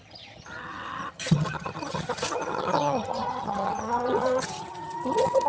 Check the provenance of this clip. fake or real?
fake